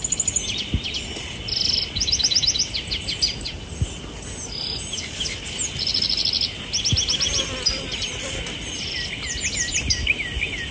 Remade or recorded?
recorded